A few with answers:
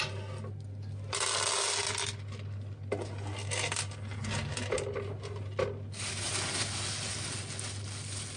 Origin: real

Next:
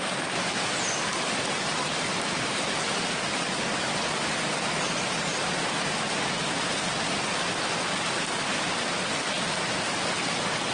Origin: real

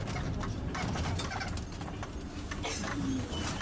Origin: real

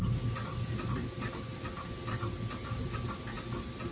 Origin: real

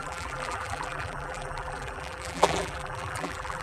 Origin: fake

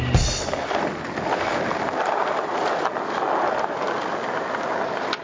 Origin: real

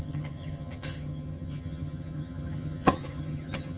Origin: fake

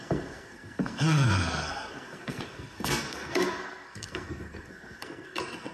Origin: fake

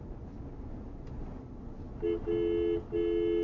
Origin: real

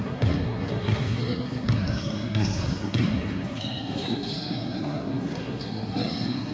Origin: fake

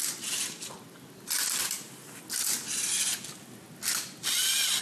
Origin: real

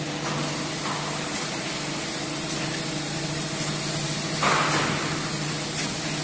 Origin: real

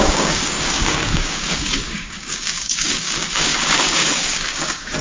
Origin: fake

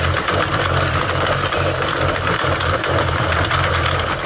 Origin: real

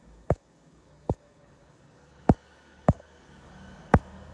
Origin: fake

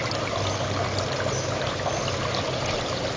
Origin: real